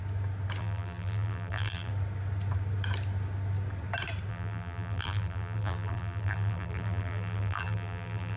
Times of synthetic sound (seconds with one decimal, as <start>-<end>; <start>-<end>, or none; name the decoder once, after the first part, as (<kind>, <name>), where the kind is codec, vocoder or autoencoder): 0.6-1.9 (vocoder, BigVGAN v2); 4.3-8.4